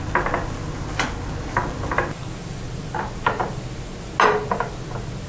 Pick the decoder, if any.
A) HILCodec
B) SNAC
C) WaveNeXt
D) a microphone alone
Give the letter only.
D